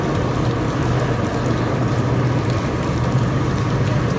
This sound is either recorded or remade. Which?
recorded